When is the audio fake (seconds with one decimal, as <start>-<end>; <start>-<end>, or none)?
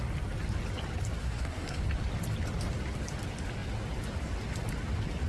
1.2-1.8